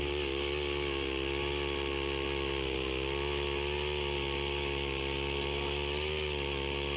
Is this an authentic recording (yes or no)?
yes